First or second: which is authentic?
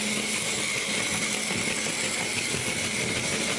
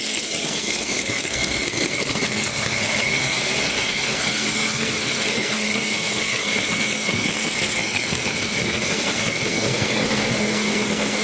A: first